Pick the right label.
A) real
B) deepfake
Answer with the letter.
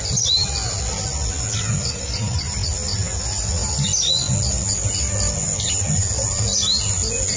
A